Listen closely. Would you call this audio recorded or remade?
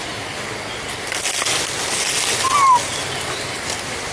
recorded